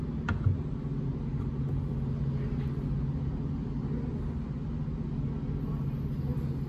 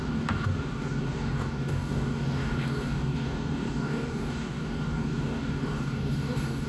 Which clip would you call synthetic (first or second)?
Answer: second